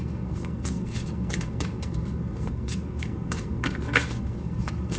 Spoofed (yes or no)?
yes